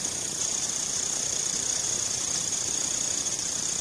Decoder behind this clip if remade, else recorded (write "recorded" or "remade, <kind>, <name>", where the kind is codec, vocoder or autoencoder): remade, vocoder, BigVGAN v2